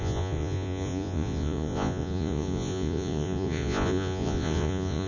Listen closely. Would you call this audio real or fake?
fake